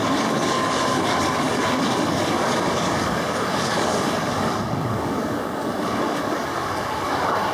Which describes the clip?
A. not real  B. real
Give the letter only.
A